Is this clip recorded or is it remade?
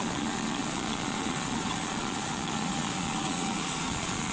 remade